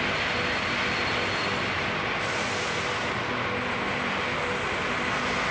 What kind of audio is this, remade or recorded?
recorded